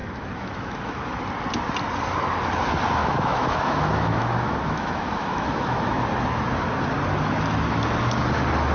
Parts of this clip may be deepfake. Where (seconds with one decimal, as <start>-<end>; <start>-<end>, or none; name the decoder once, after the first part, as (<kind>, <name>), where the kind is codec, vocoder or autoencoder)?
0.0-1.2 (autoencoder, DAC-VAE); 3.0-6.0